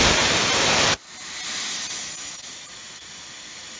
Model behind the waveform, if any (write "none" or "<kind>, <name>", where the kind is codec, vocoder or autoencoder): none